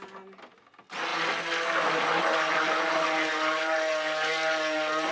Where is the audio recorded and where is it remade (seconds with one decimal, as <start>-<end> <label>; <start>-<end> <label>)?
0.0-5.1 recorded